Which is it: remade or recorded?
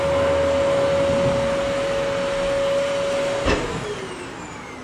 recorded